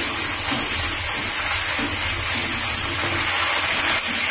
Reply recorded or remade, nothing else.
recorded